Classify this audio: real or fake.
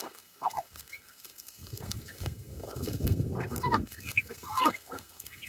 fake